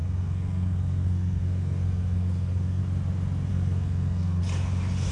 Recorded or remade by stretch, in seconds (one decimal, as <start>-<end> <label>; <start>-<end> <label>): 0.0-2.8 remade; 2.8-3.5 recorded; 3.5-4.4 remade; 4.4-5.1 recorded

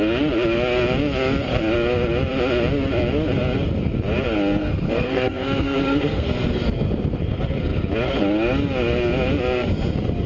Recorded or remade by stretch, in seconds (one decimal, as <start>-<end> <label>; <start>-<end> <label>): 0.0-4.6 recorded; 4.6-6.3 remade; 6.3-10.3 recorded

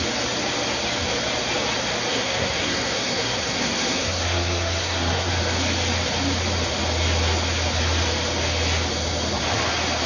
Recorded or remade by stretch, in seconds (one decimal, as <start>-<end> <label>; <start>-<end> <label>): 0.0-2.1 recorded; 2.1-5.3 remade; 5.3-10.1 recorded